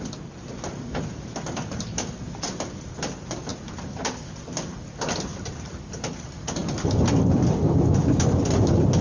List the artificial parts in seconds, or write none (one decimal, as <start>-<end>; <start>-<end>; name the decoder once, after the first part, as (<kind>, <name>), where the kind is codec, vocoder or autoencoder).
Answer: none